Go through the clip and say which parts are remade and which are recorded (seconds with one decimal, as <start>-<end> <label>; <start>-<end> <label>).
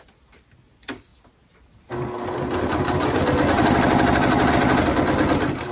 0.0-5.7 recorded